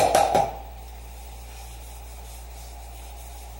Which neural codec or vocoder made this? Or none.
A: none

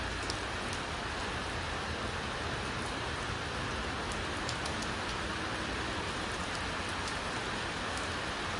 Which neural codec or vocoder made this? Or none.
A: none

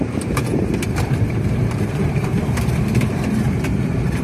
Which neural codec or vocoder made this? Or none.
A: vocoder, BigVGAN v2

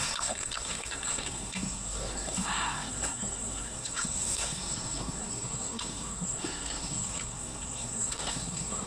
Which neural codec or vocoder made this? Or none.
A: codec, SNAC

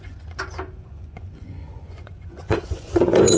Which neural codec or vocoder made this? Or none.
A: vocoder, Vocos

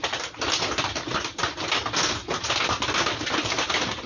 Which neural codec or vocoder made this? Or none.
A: none